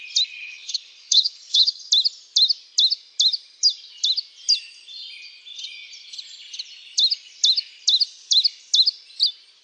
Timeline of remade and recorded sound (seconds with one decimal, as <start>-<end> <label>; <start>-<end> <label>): 0.0-0.4 recorded; 0.4-1.9 remade; 1.9-9.6 recorded